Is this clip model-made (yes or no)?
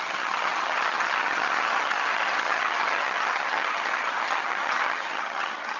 yes